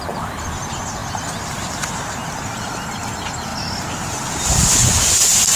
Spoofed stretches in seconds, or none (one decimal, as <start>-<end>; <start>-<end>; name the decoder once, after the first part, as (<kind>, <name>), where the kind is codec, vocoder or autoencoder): none